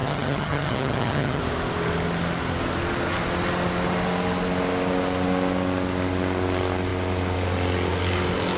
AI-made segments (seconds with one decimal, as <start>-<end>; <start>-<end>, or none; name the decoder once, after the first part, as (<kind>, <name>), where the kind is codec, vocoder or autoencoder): 0.0-1.4 (vocoder, HiFi-GAN)